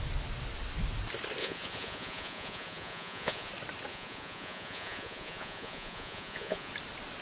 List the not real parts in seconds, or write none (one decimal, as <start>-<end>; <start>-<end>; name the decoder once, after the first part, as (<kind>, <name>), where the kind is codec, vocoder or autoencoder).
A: 1.4-3.5 (vocoder, Vocos); 3.9-6.7